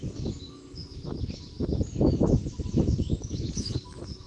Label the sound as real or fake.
fake